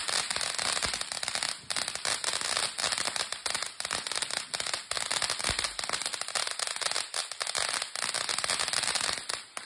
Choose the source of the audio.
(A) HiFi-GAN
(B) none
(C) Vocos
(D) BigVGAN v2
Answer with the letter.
B